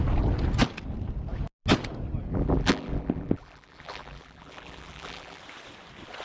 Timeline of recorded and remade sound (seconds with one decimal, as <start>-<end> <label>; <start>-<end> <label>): 0.0-2.3 recorded; 2.3-5.4 remade; 5.4-6.2 recorded